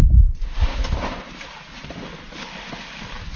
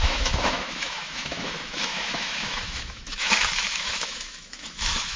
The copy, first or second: second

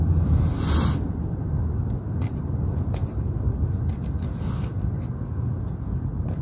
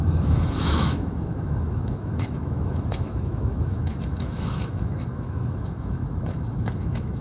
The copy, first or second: second